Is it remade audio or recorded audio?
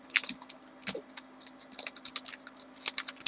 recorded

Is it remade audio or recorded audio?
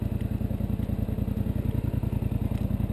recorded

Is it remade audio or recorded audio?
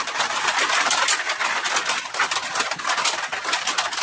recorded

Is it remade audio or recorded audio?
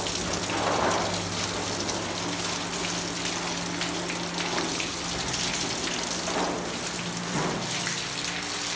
recorded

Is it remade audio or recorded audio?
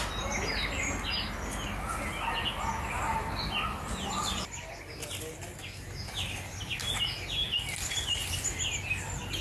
recorded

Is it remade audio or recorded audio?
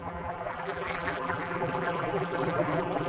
remade